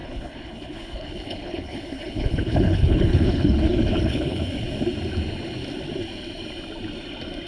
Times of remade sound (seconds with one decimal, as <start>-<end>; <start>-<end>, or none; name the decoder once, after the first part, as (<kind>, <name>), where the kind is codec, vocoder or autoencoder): 0.0-4.5 (codec, HILCodec)